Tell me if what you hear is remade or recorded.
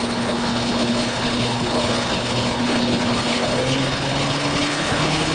remade